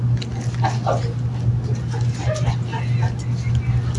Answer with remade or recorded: recorded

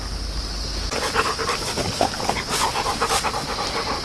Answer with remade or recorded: recorded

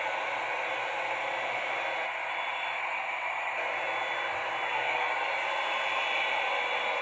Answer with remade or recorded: recorded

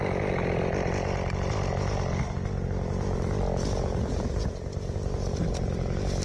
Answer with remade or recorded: recorded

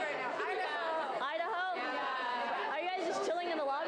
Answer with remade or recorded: recorded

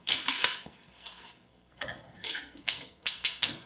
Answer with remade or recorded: remade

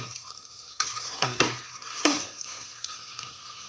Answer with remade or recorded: remade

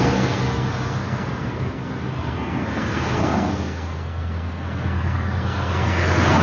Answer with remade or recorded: remade